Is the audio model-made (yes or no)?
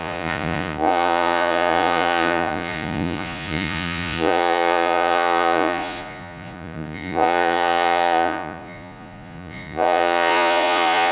yes